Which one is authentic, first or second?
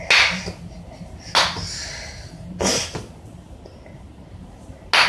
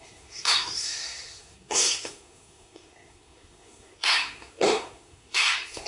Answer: first